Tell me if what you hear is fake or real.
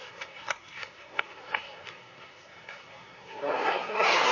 fake